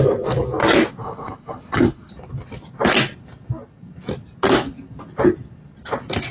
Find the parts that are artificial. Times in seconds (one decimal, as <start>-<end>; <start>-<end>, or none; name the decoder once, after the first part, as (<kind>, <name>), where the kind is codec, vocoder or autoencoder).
1.0-2.1 (codec, HILCodec)